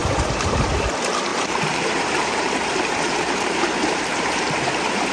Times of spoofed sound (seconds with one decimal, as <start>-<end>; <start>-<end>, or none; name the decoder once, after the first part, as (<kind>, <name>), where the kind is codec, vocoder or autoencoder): 0.0-0.9 (vocoder, BigVGAN v2); 1.3-4.4